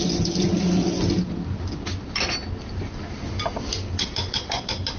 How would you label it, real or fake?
real